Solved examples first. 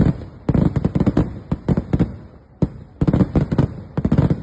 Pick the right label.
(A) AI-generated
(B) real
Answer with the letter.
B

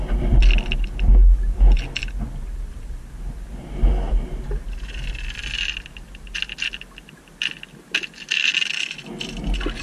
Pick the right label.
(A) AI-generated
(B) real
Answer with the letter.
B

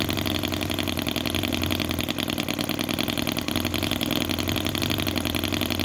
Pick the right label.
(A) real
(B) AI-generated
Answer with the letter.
A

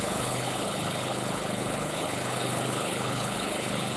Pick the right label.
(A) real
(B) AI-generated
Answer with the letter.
B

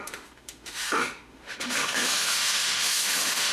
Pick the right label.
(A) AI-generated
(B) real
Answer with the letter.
A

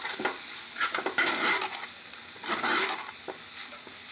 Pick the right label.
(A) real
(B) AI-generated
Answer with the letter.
A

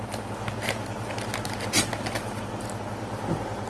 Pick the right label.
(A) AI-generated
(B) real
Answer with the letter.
B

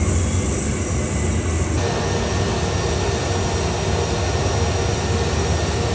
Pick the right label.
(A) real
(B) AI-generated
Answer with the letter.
A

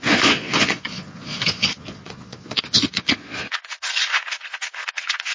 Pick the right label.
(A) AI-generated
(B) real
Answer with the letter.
A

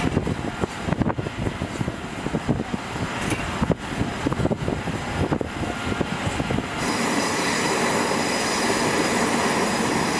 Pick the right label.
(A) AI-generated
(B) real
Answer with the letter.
B